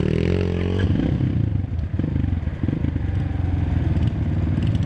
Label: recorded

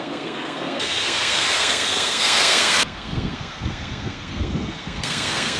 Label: remade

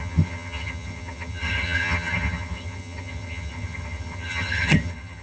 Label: remade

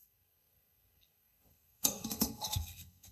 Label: remade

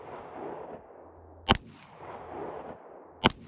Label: recorded